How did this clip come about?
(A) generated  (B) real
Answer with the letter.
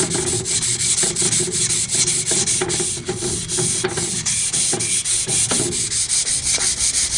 B